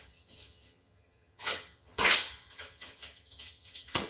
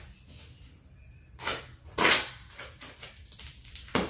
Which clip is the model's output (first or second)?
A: first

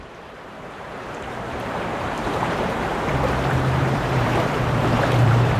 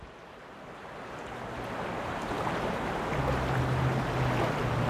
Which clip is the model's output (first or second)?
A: first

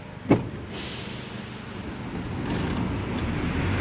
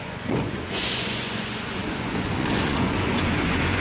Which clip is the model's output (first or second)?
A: second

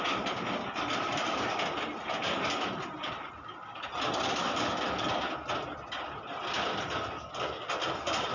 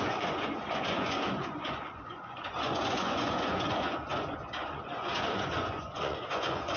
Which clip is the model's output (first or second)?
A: second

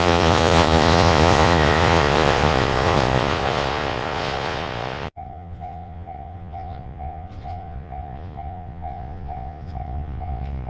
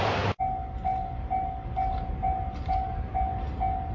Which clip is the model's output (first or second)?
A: first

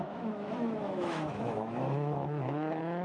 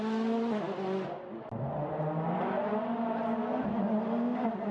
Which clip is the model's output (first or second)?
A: first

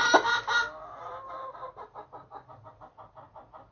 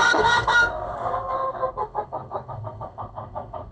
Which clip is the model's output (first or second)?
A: second